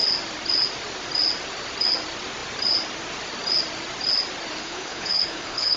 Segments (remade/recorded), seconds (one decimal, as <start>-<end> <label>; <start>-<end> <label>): 0.0-4.6 recorded; 4.6-5.8 remade